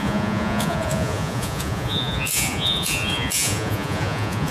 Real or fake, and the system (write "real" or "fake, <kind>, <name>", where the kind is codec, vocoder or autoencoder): fake, vocoder, Vocos